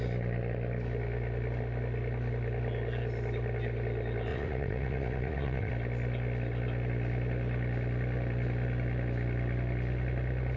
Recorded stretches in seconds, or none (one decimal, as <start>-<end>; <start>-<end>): 0.0-4.3; 5.7-10.6